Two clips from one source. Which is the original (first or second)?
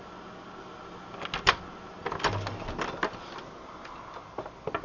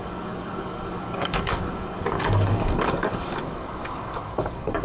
first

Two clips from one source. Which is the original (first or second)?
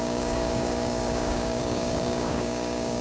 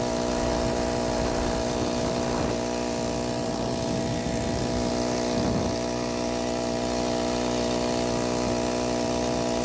second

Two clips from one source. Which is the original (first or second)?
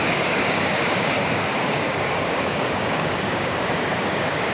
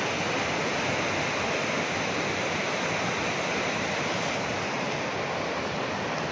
second